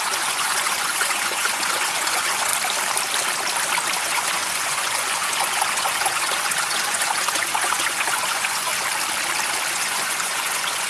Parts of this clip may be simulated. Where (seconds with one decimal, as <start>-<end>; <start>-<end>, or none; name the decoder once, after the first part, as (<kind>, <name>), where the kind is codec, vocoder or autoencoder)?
0.0-2.5 (vocoder, Vocos); 4.0-8.7; 9.7-10.9